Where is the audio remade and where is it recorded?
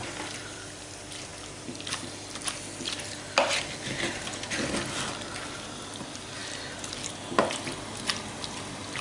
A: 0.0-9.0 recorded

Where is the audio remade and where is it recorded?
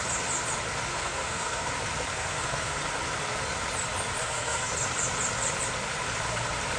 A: 0.0-0.9 recorded; 0.9-1.7 remade; 1.7-2.1 recorded; 2.1-2.8 remade; 2.8-4.2 recorded; 4.2-4.7 remade; 4.7-6.8 recorded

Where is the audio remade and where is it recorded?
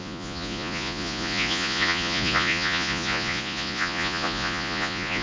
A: 0.0-5.2 remade